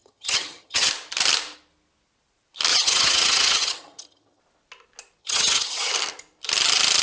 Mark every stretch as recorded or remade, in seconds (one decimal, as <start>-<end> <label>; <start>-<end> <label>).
0.0-0.9 remade; 0.9-2.7 recorded; 2.7-4.4 remade; 4.4-5.2 recorded; 5.2-5.9 remade; 5.9-7.0 recorded